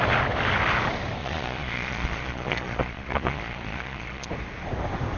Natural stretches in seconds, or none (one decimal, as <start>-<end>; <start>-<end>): 0.0-1.2; 4.3-5.2